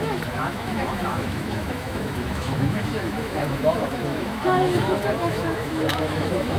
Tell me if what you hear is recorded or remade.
remade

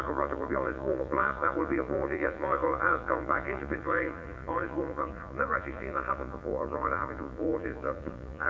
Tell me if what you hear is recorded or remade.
remade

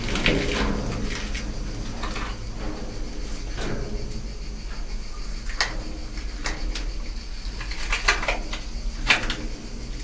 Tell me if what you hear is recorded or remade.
recorded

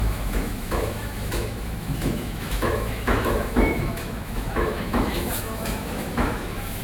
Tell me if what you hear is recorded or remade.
remade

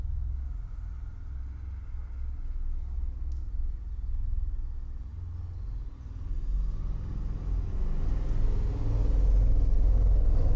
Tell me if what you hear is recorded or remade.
recorded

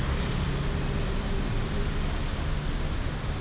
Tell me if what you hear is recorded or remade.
recorded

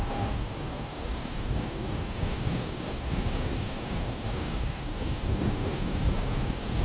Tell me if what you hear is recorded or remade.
remade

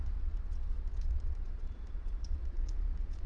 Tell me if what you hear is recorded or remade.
remade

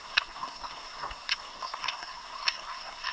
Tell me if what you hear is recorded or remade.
remade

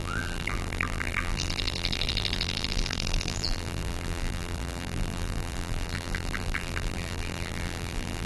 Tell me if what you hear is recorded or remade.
remade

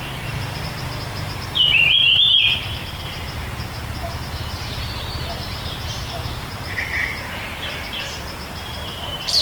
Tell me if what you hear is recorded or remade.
remade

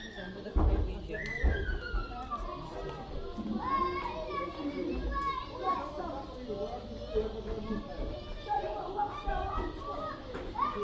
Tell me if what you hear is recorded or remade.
recorded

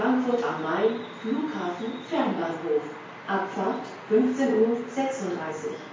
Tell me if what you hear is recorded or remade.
recorded